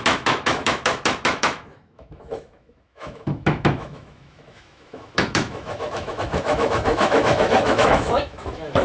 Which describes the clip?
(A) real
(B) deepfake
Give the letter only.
B